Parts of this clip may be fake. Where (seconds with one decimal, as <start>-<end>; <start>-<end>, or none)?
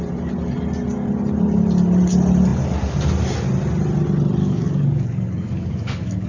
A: 4.4-6.3